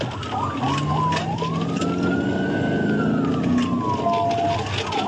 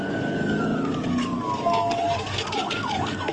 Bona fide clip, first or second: first